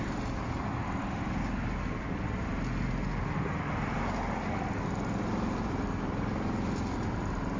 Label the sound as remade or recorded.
recorded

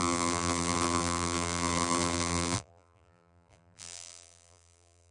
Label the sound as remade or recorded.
remade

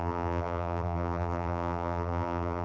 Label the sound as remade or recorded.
remade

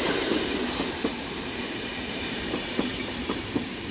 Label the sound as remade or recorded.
remade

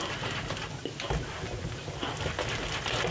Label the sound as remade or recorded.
recorded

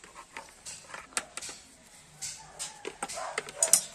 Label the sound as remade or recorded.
recorded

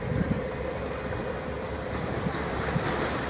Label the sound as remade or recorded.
recorded